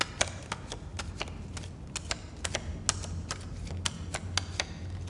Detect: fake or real real